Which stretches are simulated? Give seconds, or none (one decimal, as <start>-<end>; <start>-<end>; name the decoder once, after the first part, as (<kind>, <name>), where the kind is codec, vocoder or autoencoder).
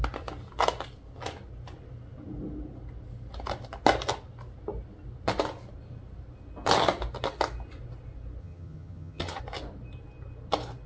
8.4-9.4 (vocoder, HiFi-GAN)